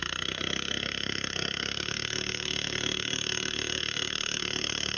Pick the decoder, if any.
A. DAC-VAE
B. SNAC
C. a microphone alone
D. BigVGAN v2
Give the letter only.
B